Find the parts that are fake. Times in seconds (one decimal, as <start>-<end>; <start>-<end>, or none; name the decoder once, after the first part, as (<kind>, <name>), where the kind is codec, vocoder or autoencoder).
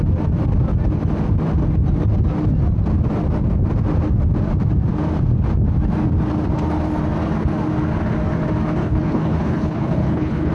8.8-10.5 (codec, HILCodec)